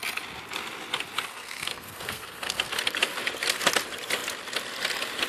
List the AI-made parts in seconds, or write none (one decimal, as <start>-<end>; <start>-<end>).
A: 1.3-2.7